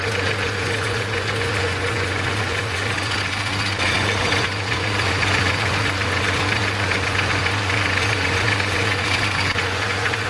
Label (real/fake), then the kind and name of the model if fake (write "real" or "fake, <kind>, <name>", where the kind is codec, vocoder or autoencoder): fake, vocoder, Vocos